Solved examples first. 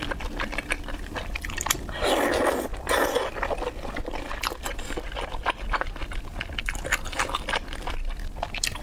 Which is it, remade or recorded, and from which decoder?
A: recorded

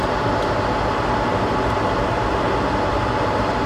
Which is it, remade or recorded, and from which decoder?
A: recorded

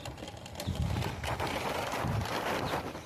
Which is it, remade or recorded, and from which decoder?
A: recorded